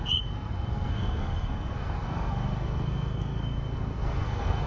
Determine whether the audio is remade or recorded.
remade